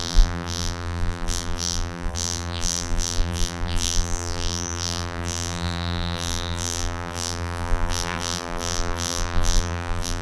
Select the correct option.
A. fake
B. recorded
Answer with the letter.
A